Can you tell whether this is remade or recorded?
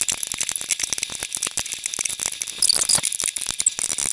recorded